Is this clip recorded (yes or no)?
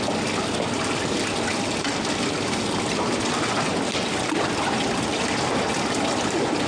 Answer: yes